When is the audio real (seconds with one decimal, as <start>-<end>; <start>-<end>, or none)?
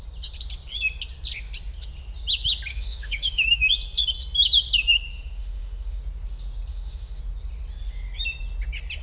0.0-2.7; 3.7-5.1; 6.0-6.7; 7.2-9.0